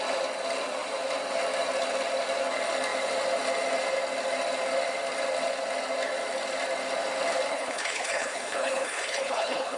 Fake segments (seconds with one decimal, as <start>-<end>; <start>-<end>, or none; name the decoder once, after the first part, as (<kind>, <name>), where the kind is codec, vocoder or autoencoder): 7.5-9.8 (codec, HILCodec)

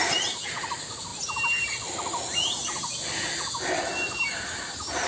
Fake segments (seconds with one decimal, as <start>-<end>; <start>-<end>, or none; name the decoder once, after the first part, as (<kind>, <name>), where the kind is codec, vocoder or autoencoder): none

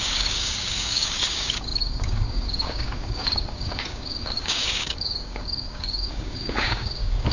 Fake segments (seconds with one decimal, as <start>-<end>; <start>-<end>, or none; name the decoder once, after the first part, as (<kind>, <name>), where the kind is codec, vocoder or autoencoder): 0.0-7.3 (codec, DAC)

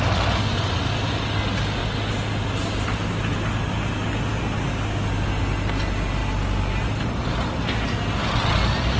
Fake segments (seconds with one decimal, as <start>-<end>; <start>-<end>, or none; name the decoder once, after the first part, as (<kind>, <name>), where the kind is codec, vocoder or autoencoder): none

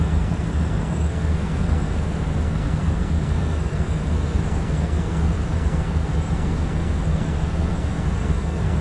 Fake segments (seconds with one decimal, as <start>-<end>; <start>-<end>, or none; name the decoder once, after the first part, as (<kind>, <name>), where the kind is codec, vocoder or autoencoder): 0.0-8.8 (codec, SNAC)

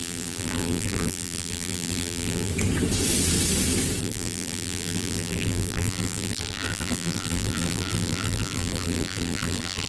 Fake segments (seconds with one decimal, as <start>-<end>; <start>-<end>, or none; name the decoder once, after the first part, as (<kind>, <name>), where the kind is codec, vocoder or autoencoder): 0.0-2.5 (vocoder, BigVGAN v2); 4.0-9.9

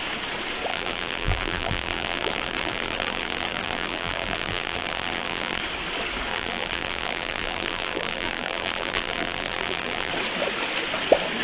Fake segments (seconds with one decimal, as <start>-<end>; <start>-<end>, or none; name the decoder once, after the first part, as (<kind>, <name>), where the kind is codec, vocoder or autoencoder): 0.7-5.6 (vocoder, BigVGAN v2); 6.3-10.1

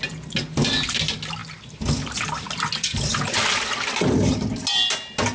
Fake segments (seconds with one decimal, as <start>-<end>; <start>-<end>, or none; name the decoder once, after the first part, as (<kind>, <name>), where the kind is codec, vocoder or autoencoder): none